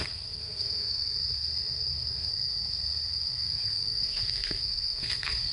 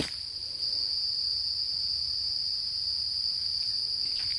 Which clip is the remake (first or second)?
first